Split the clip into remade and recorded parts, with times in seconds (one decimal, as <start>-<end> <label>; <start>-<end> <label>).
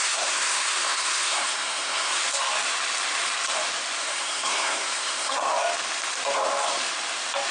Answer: 0.0-2.2 remade; 2.2-4.0 recorded; 4.0-5.5 remade; 5.5-7.5 recorded